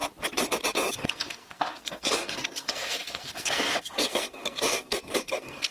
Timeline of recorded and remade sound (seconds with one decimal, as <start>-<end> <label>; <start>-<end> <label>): 0.0-0.9 recorded; 0.9-5.7 remade